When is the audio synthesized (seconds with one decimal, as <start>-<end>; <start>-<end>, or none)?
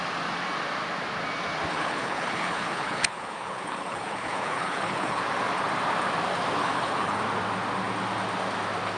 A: 1.7-5.2; 6.6-7.2